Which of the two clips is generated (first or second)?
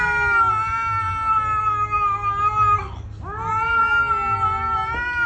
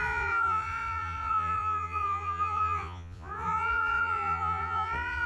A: second